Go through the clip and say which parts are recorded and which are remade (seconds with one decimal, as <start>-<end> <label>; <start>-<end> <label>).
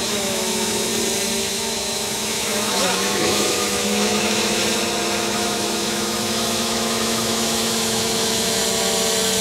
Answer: 0.0-0.9 remade; 0.9-1.4 recorded; 1.4-4.6 remade; 4.6-5.2 recorded; 5.2-8.6 remade; 8.6-9.4 recorded